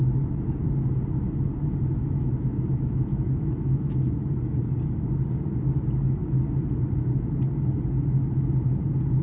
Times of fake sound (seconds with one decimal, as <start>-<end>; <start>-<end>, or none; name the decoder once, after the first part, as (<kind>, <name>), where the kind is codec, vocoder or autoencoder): 2.0-4.2 (autoencoder, DAC-VAE)